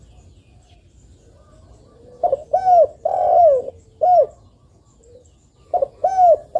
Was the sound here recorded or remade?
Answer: recorded